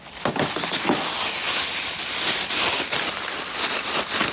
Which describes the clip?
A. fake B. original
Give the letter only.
B